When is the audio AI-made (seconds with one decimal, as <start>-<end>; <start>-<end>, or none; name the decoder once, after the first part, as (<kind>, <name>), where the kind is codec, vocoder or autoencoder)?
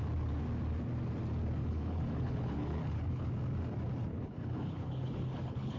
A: 1.6-3.3 (codec, HILCodec); 4.1-5.8